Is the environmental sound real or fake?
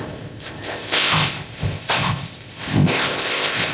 fake